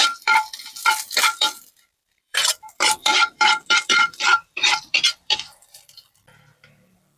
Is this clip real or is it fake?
fake